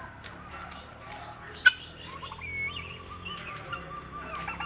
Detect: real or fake real